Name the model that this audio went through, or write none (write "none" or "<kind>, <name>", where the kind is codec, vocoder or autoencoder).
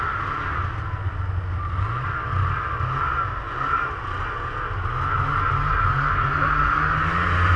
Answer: none